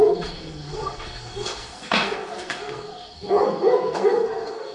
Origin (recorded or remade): remade